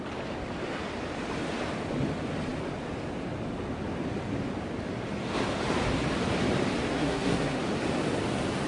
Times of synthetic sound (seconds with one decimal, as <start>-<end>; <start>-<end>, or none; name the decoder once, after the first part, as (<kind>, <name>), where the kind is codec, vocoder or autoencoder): 6.9-7.6 (codec, SNAC)